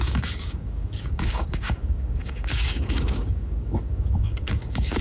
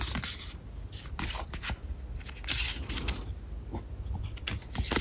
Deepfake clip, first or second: first